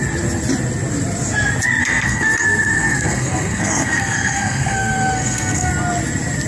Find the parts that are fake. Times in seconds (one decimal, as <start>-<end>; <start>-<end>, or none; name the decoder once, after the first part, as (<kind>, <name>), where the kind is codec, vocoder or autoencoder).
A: 1.8-5.7 (codec, SNAC)